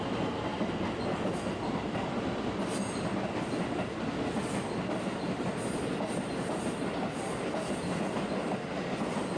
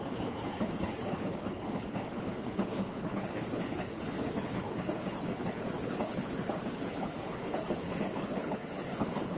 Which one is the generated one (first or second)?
second